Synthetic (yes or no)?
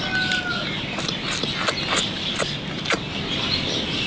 no